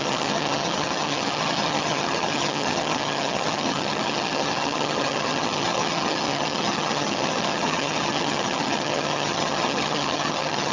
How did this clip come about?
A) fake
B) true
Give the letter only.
A